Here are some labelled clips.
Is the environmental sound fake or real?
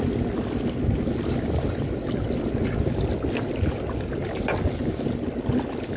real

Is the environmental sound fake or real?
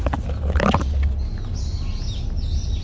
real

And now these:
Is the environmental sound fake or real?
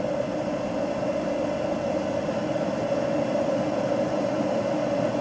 real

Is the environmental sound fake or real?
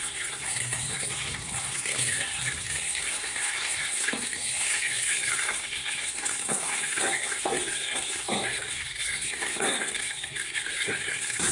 fake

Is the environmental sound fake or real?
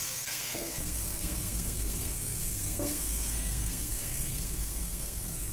fake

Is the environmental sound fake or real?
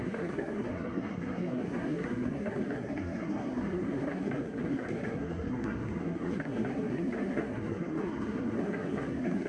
fake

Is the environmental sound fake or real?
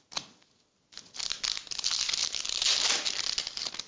real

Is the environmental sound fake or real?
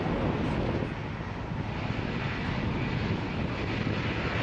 real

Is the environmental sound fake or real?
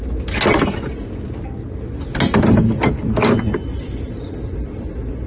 real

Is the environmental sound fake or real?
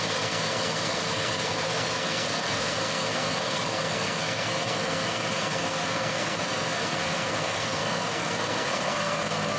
fake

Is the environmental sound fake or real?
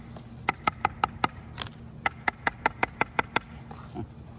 real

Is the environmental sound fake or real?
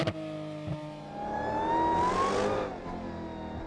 real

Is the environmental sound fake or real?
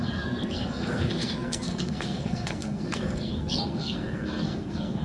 fake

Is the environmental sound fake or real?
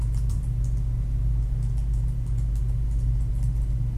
real